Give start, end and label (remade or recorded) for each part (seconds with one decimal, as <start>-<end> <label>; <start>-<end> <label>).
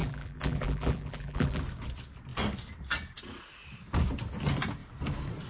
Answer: 0.0-1.6 remade; 1.6-5.5 recorded